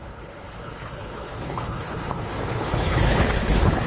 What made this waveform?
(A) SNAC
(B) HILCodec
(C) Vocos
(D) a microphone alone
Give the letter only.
B